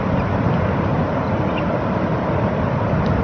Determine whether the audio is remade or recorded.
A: recorded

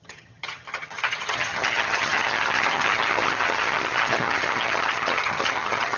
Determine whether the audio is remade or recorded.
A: remade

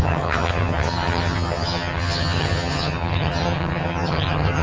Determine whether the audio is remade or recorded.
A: remade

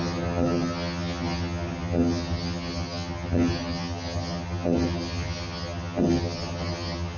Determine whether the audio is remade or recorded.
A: remade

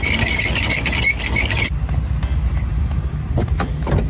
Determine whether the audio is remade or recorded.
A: recorded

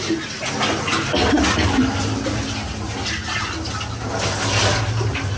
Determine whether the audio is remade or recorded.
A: recorded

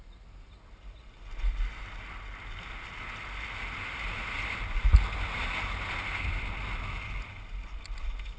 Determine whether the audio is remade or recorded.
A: recorded